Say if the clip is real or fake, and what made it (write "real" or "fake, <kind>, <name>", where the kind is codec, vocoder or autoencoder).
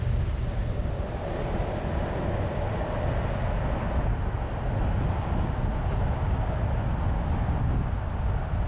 real